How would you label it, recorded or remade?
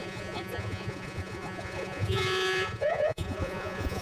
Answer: remade